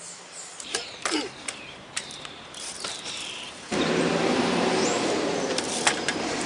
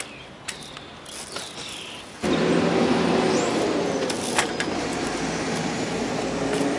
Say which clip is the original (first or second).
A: second